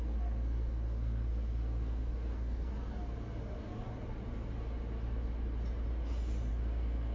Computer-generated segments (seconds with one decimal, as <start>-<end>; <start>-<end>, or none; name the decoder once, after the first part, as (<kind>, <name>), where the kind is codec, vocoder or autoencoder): 0.0-2.7 (codec, SNAC); 6.5-7.1